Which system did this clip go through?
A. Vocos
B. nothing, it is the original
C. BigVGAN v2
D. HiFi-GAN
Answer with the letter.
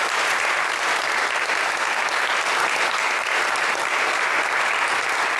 B